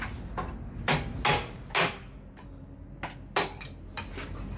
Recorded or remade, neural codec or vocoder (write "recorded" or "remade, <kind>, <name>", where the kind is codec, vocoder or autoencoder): recorded